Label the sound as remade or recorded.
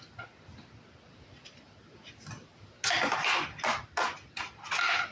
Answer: recorded